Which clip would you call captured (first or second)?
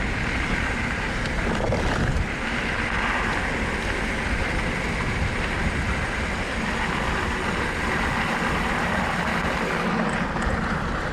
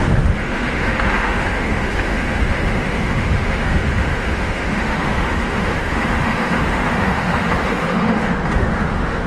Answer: first